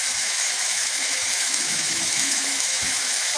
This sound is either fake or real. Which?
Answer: fake